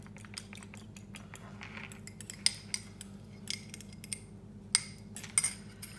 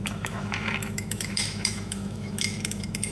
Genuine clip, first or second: first